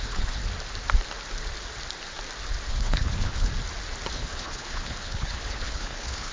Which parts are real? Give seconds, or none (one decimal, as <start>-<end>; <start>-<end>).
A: 0.4-2.7; 3.5-4.1